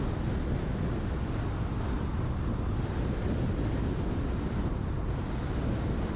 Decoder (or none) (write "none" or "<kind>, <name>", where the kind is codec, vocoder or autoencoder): none